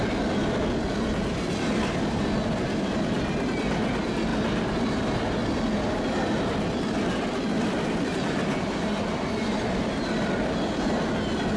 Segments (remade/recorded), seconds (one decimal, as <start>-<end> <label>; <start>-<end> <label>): 0.0-11.6 recorded